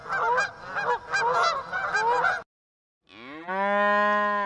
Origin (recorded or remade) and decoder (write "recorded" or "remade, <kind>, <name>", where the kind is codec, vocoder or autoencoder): recorded